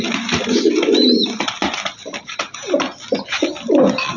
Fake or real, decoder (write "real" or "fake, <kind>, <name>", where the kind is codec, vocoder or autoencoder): real